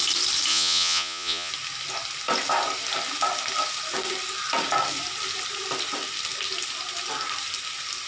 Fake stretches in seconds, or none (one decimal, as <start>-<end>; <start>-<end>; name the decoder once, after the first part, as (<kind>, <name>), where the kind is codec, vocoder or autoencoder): 0.5-1.5 (vocoder, Vocos)